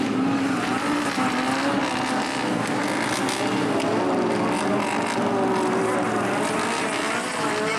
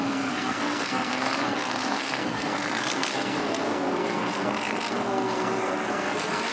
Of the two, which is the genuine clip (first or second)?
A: first